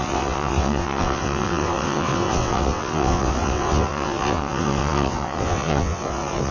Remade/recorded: remade